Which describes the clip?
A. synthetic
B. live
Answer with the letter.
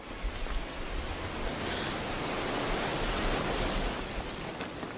B